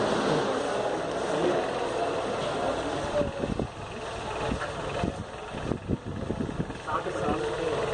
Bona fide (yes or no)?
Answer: yes